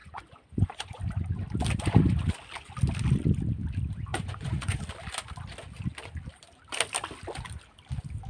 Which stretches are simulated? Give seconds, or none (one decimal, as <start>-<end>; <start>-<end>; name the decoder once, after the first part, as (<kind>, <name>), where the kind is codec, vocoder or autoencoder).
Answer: 0.0-1.0 (vocoder, Vocos); 4.1-4.8